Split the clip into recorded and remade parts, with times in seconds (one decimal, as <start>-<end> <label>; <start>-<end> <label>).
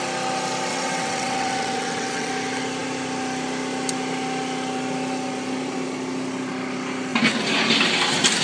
0.0-0.7 recorded; 0.7-2.3 remade; 2.3-8.4 recorded